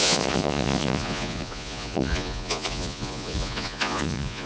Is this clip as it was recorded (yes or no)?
no